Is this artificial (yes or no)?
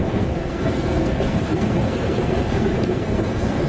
yes